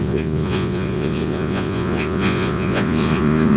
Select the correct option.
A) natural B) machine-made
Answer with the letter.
B